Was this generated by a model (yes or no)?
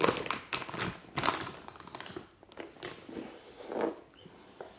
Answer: no